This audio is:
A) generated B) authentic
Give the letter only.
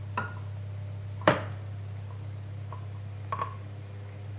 B